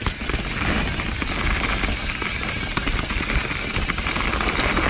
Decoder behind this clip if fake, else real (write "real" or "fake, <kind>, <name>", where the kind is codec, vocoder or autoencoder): real